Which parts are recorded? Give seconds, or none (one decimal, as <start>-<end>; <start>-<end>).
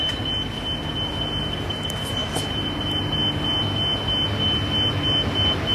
0.0-5.7